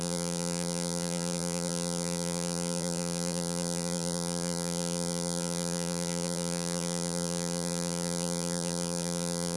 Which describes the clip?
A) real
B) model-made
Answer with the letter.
B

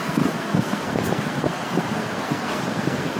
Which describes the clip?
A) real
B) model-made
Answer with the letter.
B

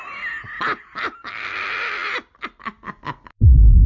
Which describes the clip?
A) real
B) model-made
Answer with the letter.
A